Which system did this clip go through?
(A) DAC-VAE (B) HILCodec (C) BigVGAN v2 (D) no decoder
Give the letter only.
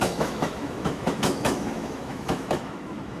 A